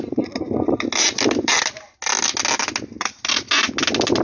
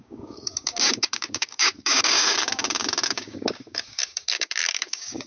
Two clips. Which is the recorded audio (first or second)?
first